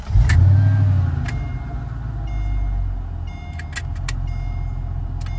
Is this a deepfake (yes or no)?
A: no